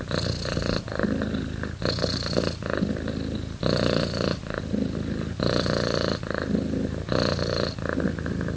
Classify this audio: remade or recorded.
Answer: recorded